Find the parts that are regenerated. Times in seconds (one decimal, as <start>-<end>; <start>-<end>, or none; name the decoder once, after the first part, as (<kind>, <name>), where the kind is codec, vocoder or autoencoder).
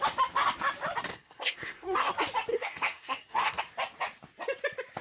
1.1-2.1 (codec, SNAC); 2.5-3.6